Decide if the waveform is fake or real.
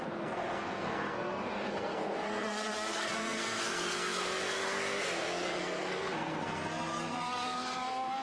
fake